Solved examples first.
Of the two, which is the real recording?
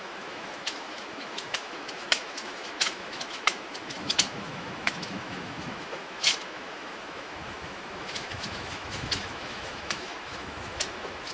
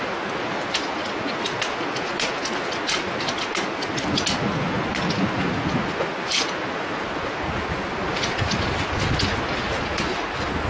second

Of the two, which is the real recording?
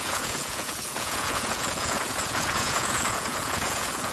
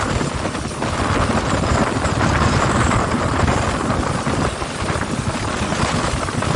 second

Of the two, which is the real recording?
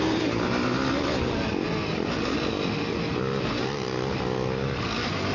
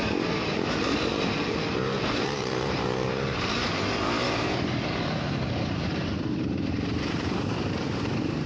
first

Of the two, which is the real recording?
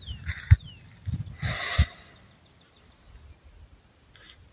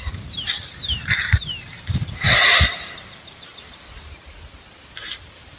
first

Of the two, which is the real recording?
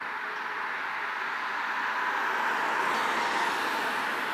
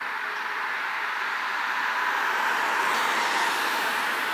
first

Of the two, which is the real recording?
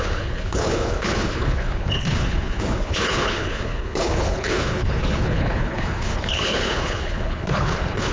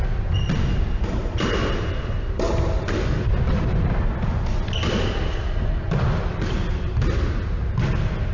second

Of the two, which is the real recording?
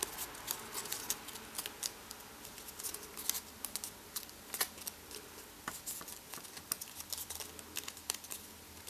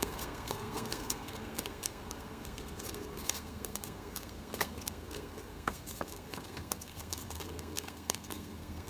first